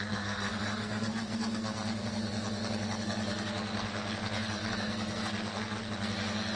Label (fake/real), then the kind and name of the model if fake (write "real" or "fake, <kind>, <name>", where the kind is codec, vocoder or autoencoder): fake, codec, SNAC